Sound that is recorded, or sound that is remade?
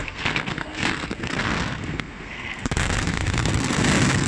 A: remade